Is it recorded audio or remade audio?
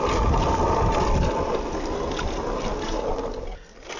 recorded